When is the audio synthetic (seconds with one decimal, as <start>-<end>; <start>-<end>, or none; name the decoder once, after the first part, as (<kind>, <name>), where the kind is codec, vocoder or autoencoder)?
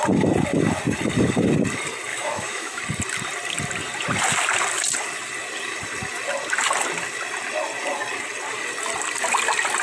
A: 2.1-2.8 (autoencoder, DAC-VAE)